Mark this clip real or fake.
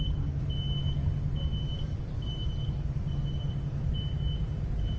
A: real